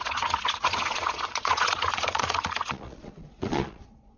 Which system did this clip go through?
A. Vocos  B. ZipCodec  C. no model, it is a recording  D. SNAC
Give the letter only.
A